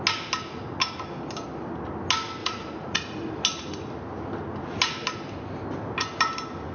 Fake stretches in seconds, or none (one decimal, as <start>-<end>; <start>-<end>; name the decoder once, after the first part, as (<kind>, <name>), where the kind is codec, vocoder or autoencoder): 2.4-3.3 (vocoder, Vocos)